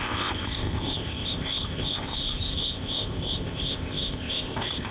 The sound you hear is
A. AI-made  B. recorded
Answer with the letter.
A